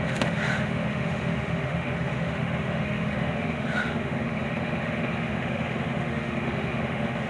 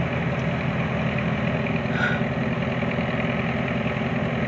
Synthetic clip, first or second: first